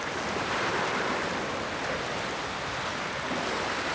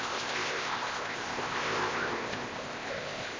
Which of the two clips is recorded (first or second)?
first